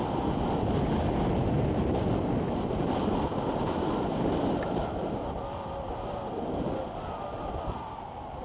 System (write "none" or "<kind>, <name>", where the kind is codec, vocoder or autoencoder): none